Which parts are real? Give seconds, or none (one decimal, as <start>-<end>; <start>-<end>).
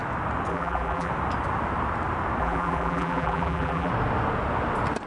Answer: 0.0-0.5; 1.1-2.4; 3.9-5.1